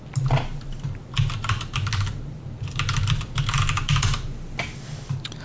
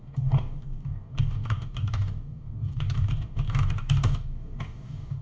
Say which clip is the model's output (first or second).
second